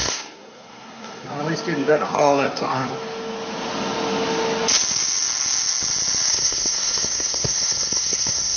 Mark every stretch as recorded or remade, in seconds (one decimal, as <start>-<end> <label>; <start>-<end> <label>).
0.0-1.4 remade; 1.4-1.9 recorded; 1.9-2.9 remade; 2.9-6.3 recorded; 6.3-8.6 remade